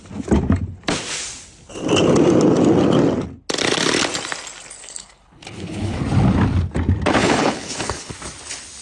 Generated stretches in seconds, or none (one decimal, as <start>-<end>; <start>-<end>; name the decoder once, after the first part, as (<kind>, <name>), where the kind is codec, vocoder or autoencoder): 4.8-6.0 (codec, HILCodec); 7.2-8.2